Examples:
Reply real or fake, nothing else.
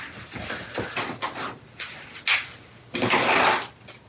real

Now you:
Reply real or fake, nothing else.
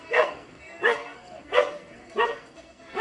fake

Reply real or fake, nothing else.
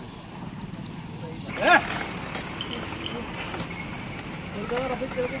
real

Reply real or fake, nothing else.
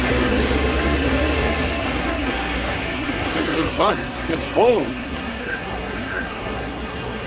fake